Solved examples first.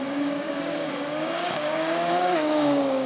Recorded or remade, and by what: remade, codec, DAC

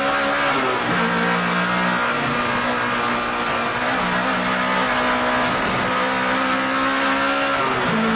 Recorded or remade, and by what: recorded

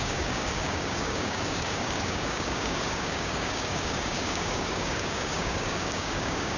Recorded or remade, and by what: remade, codec, DAC